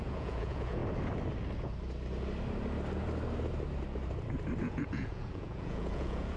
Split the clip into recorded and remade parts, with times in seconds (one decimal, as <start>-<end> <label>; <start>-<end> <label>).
0.0-0.8 remade; 0.8-4.6 recorded; 4.6-6.4 remade